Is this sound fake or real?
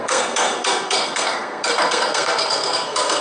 fake